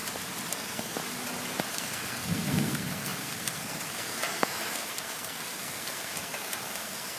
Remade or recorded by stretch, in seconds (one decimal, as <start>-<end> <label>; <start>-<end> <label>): 0.0-0.5 recorded; 0.5-1.0 remade; 1.0-1.7 recorded; 1.7-7.2 remade